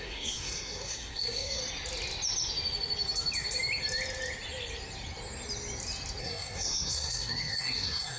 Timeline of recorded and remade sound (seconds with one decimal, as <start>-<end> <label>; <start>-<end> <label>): 0.0-1.6 remade; 1.6-6.2 recorded; 6.2-8.2 remade